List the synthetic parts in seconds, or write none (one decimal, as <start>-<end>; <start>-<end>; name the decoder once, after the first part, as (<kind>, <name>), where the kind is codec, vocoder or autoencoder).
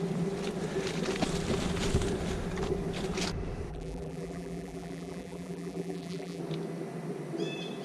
3.7-6.4 (vocoder, BigVGAN v2)